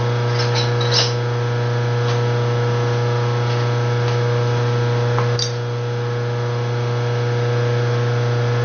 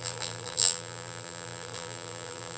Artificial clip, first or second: second